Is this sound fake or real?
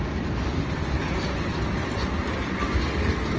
real